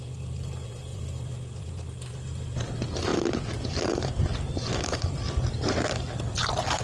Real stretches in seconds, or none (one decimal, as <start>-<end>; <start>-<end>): 0.0-3.1